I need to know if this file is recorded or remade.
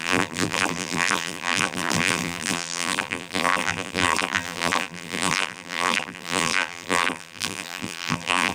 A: remade